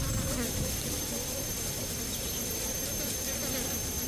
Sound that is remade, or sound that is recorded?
remade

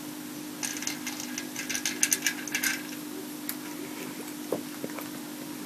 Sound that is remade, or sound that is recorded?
recorded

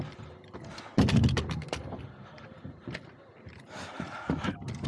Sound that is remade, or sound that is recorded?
recorded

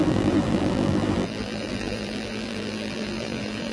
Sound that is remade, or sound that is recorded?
remade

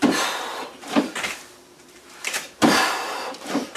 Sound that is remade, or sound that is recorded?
remade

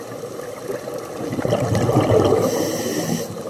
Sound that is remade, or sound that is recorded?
recorded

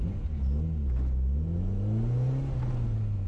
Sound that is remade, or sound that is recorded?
recorded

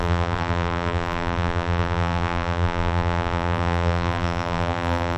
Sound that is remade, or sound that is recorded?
remade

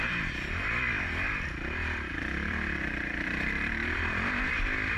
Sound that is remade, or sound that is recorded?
remade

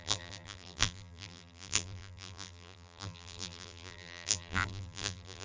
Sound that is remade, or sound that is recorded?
remade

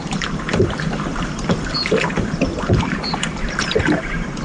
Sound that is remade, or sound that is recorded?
remade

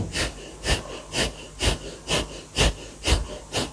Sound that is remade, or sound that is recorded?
recorded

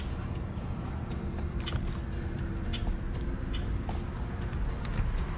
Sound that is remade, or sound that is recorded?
recorded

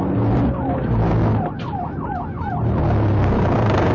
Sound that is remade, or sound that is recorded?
recorded